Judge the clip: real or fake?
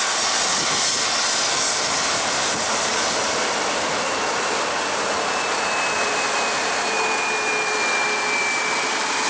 real